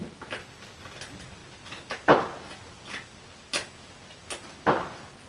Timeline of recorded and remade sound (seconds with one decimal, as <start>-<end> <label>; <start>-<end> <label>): 0.0-5.3 recorded